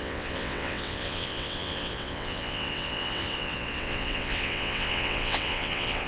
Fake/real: fake